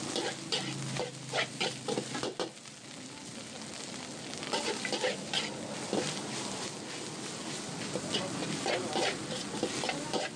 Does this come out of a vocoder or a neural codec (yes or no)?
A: no